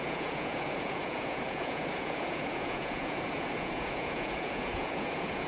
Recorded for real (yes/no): no